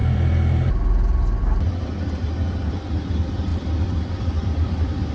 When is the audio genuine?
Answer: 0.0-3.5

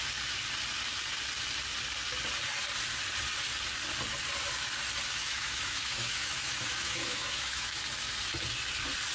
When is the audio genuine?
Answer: 0.0-5.2; 7.8-9.1

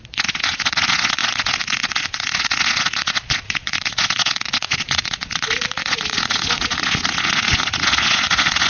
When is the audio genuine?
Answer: none

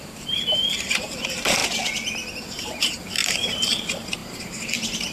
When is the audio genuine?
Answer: 1.6-2.3